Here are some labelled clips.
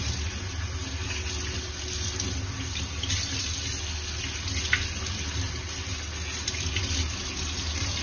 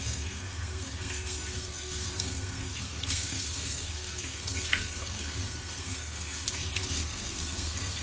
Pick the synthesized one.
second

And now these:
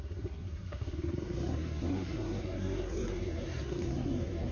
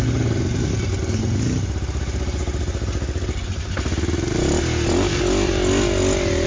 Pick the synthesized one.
first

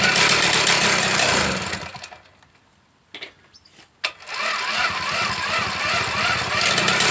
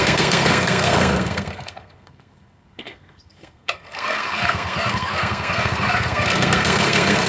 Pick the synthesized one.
second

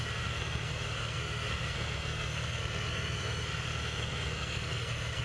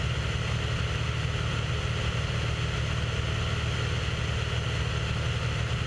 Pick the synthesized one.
first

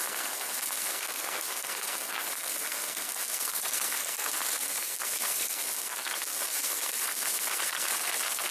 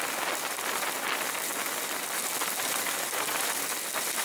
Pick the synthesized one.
first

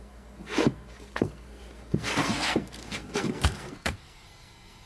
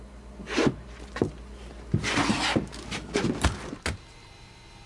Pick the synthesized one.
first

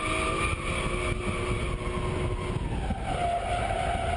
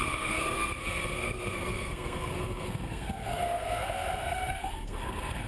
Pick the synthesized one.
second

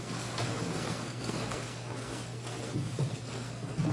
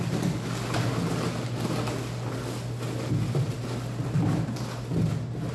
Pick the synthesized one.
first